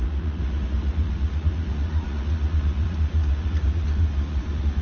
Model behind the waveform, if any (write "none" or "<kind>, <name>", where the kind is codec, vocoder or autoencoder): vocoder, Vocos